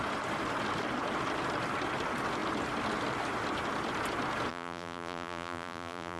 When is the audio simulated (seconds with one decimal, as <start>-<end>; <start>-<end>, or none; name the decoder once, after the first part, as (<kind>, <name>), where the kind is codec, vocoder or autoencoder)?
4.5-6.2 (vocoder, BigVGAN v2)